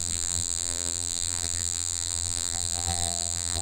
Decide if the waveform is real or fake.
fake